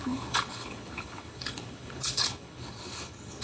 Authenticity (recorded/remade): remade